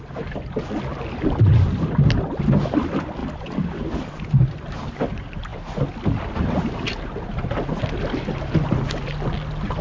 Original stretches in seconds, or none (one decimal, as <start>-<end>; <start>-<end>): 0.0-3.2; 4.3-9.8